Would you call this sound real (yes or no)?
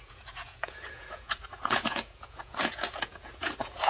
no